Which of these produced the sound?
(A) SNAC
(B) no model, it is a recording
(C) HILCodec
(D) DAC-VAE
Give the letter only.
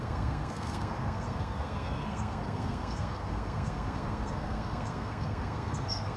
A